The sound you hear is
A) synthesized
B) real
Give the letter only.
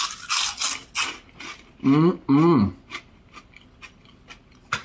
B